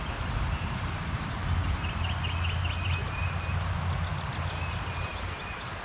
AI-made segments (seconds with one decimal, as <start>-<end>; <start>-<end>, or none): none